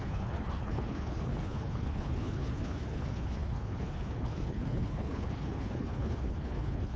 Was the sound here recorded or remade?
remade